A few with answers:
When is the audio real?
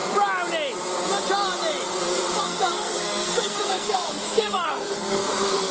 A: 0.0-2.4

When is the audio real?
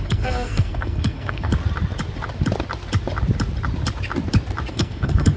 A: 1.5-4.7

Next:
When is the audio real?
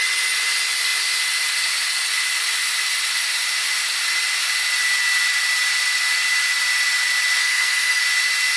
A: 0.0-7.4; 8.0-8.6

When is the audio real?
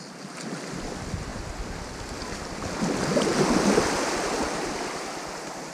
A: 0.0-5.7